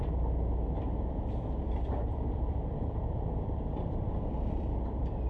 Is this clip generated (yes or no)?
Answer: yes